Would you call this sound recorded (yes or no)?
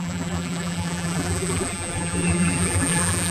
no